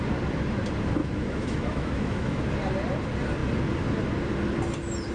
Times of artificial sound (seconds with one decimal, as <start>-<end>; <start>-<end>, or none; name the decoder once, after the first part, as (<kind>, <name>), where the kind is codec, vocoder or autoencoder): 1.0-2.5 (autoencoder, DAC-VAE)